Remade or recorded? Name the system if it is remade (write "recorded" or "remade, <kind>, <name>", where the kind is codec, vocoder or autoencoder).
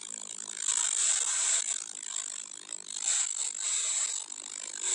recorded